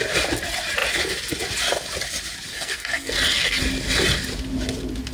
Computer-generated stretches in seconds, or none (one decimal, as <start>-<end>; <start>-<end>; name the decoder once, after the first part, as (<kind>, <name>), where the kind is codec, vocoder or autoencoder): 2.5-3.6 (codec, SNAC)